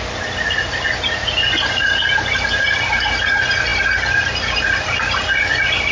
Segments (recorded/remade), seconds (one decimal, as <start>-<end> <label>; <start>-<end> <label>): 0.0-5.9 recorded